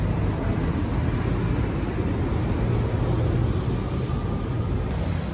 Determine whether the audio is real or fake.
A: real